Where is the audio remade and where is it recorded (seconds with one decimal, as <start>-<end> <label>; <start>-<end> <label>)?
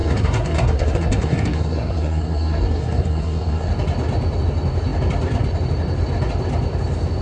0.0-3.7 remade; 3.7-7.2 recorded